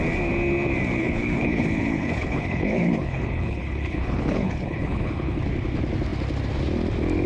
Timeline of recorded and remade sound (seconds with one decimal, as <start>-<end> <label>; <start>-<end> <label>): 0.0-1.0 recorded; 1.0-5.4 remade; 5.4-7.3 recorded